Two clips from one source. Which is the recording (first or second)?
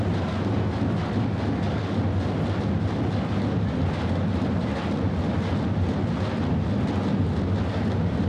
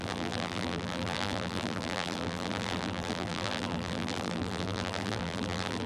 first